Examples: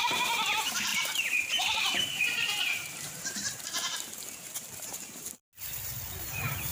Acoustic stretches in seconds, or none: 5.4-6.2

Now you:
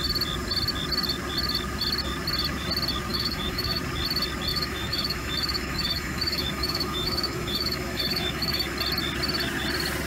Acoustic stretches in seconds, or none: 0.0-3.1; 3.8-4.5; 8.7-10.1

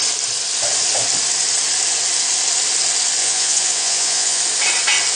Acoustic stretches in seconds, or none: 0.0-3.2; 4.4-5.2

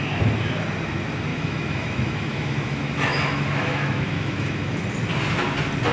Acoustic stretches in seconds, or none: 0.0-1.3; 4.8-5.9

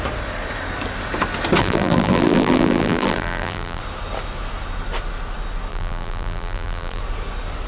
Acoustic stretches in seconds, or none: 0.0-1.6; 3.8-5.7; 7.0-7.7

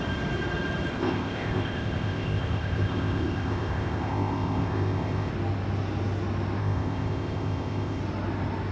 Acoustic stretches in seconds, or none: 0.0-0.9; 5.3-6.6; 8.0-8.7

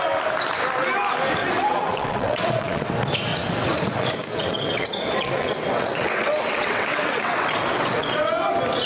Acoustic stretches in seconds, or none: 0.0-1.4; 2.9-3.3; 8.5-8.9